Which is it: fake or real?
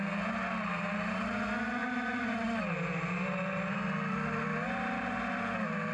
real